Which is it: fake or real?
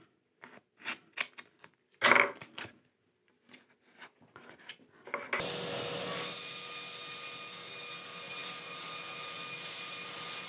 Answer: real